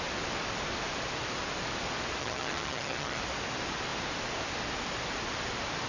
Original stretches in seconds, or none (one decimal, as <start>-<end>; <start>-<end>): 0.0-2.2; 3.2-5.9